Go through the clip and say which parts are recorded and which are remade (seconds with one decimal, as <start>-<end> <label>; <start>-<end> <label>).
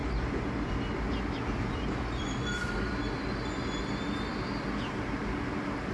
0.0-5.9 recorded